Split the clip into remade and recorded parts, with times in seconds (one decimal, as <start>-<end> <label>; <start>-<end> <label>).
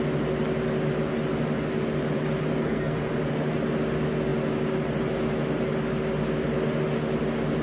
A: 0.0-2.6 recorded; 2.6-3.2 remade; 3.2-7.6 recorded